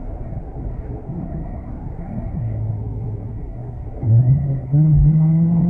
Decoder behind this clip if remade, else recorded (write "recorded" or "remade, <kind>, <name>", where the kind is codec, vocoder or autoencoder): remade, codec, SNAC